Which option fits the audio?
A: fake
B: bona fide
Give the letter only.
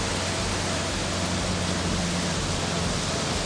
B